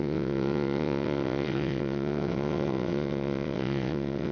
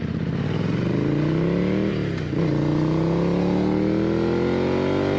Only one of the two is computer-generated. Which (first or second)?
first